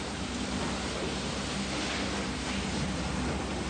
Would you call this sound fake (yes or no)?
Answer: no